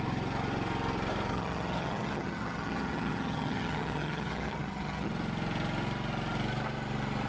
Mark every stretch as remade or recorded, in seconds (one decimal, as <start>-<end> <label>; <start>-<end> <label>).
0.0-1.3 recorded; 1.3-5.1 remade; 5.1-7.3 recorded